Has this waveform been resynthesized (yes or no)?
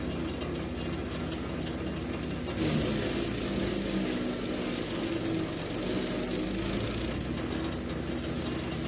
no